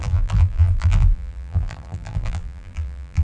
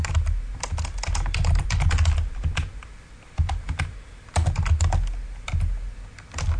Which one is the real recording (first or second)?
second